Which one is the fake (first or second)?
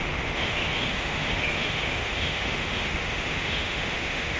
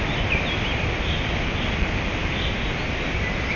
first